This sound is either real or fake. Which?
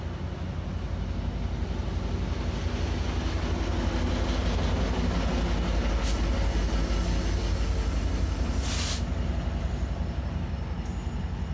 real